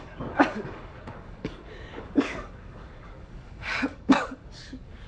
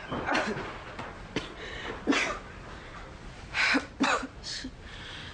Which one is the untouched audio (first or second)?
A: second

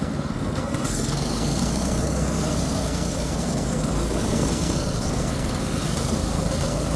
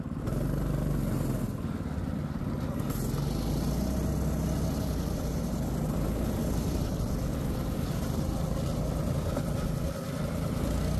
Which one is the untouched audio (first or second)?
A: second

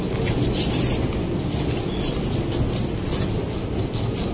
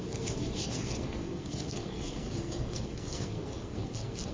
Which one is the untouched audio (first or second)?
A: first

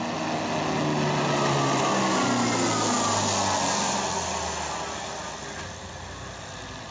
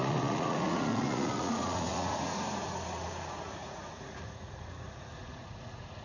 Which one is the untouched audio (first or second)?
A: first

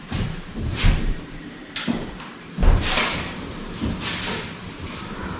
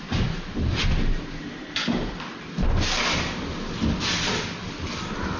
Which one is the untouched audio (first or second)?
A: second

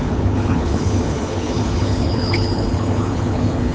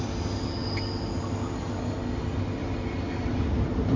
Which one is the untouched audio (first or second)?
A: second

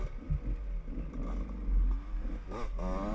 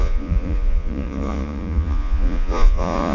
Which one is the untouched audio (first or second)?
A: first